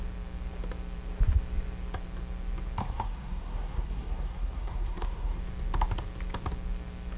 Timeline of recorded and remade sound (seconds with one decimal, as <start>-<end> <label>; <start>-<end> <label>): 0.0-2.8 recorded; 2.8-5.4 remade; 5.4-7.2 recorded